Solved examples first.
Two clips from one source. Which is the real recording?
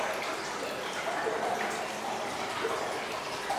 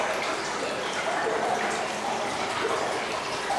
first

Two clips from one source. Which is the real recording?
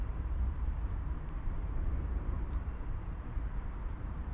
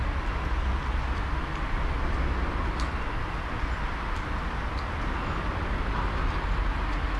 second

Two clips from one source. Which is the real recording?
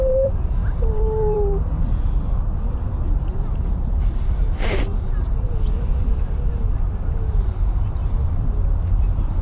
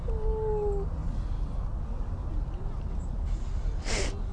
second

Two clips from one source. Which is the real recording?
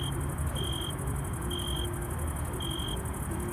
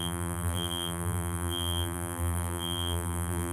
first